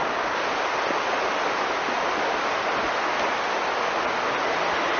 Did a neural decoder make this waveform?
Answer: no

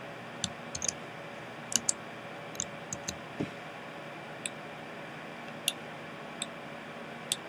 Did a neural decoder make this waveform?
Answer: no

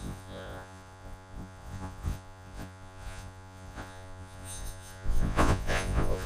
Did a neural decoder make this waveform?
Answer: yes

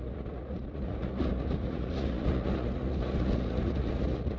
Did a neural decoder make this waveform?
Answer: yes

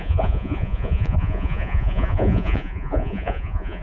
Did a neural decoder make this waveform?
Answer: yes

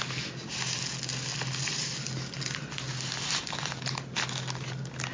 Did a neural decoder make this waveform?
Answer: no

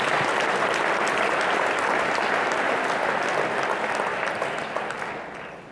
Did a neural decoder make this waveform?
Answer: no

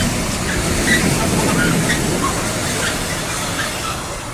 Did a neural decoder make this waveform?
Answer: no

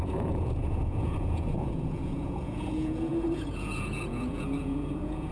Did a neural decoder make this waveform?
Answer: yes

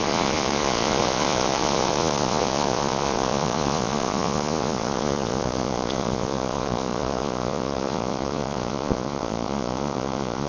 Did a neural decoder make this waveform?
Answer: yes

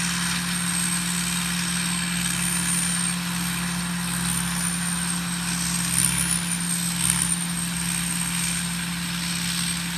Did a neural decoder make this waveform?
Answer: no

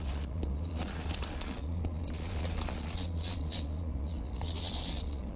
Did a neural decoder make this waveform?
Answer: yes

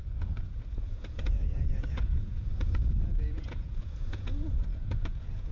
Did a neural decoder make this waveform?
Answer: yes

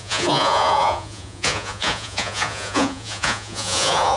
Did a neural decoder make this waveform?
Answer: yes